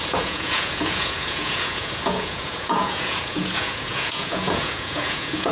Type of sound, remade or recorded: remade